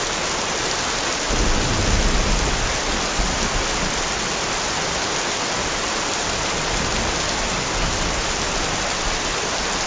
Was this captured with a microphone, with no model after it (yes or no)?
yes